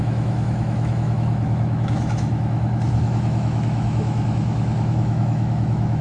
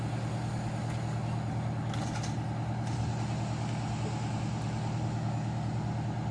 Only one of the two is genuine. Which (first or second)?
second